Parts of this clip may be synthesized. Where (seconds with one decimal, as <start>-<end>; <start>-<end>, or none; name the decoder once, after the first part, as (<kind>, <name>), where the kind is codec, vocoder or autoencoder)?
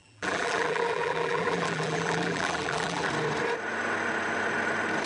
0.0-3.1 (vocoder, BigVGAN v2)